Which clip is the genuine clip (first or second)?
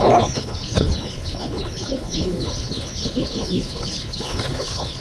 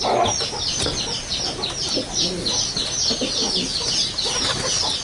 second